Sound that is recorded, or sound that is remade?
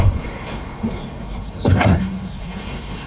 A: remade